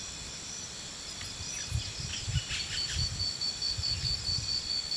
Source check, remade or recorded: recorded